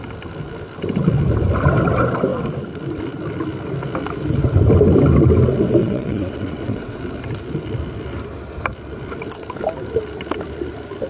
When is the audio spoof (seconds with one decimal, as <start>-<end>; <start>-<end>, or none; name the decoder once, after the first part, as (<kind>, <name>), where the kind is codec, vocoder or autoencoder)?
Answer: 5.8-7.0 (vocoder, WaveNeXt)